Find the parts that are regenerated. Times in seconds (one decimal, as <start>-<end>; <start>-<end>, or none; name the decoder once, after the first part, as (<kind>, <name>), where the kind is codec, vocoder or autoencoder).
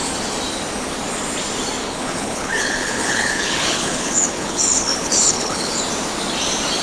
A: 1.8-5.8 (codec, HILCodec)